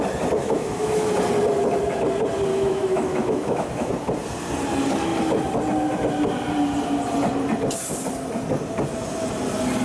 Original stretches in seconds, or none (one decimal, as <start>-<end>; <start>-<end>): 0.0-0.4; 1.1-2.5; 3.9-9.8